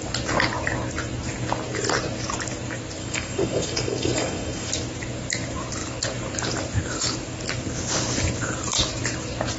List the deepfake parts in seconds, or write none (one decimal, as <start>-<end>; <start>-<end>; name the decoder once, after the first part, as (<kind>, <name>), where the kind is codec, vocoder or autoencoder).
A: 3.0-4.7 (codec, DAC)